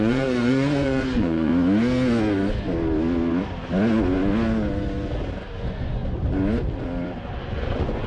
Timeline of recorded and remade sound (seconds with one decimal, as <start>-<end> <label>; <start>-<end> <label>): 0.0-1.5 remade; 1.5-5.6 recorded; 5.6-6.0 remade; 6.0-7.5 recorded; 7.5-8.1 remade